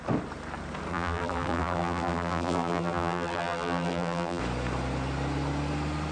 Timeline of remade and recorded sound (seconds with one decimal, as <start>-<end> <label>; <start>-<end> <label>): 0.0-0.9 recorded; 0.9-4.4 remade; 4.4-6.1 recorded